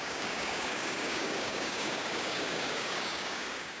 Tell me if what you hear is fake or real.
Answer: fake